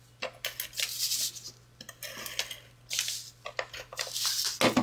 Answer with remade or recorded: recorded